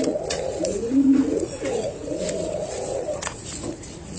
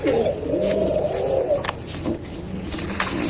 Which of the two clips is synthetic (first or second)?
first